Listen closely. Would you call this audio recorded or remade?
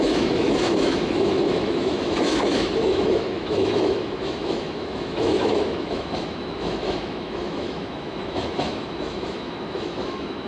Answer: remade